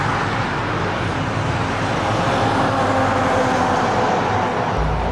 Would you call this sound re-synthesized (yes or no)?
no